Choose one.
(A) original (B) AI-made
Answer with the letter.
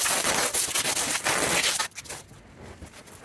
A